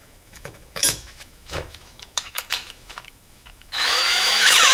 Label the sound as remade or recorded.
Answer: remade